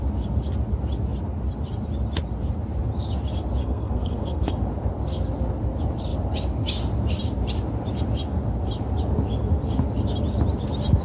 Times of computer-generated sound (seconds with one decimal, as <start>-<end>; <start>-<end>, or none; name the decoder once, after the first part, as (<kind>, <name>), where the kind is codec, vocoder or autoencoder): 3.6-4.5 (codec, SNAC)